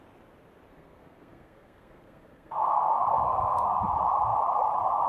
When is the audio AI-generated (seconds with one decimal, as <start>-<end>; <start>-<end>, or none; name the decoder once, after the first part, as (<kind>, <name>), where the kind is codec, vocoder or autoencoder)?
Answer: 0.7-3.8 (codec, SNAC)

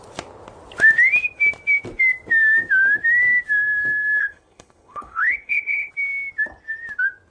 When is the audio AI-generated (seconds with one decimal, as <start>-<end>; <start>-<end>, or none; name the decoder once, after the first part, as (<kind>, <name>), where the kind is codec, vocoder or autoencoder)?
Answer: 4.2-5.9 (codec, HILCodec)

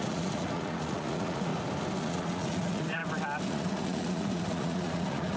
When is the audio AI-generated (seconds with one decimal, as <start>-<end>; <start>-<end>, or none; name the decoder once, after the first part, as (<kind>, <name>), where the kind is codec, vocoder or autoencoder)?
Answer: 0.0-1.5 (vocoder, Vocos); 2.0-3.0; 3.5-5.4

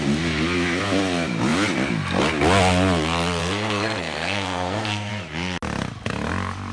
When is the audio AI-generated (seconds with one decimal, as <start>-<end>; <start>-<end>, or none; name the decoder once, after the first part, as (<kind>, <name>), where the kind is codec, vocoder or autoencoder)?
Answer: 3.4-5.1 (codec, SNAC)